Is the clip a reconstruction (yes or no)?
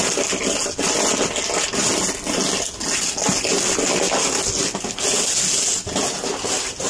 no